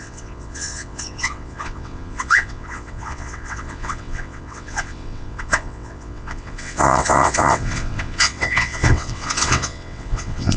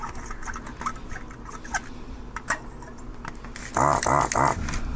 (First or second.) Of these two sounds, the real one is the second